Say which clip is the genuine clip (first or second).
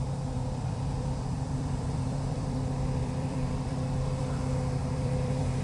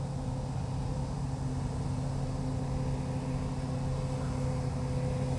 second